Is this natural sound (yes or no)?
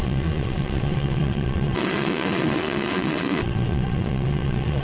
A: no